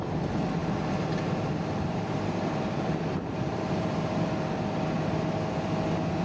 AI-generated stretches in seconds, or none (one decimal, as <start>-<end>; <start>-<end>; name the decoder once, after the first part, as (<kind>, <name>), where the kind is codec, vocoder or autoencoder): 0.6-4.3 (vocoder, BigVGAN v2)